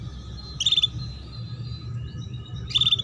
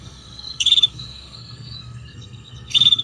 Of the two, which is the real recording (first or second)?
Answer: first